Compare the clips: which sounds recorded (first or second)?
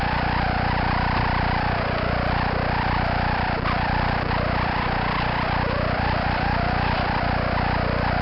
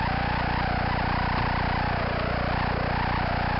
second